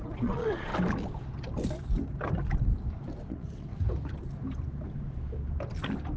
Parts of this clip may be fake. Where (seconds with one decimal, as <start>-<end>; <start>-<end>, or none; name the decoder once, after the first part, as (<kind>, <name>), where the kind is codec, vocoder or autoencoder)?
0.0-0.7 (vocoder, WaveNeXt); 3.3-3.7